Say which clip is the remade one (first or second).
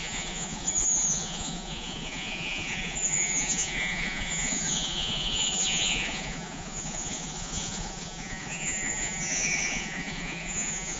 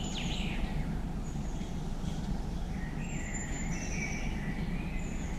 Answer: first